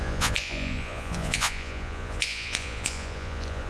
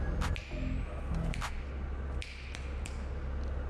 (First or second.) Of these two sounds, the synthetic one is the first